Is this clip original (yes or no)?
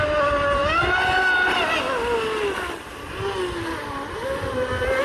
yes